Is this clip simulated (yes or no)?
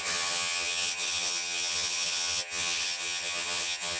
yes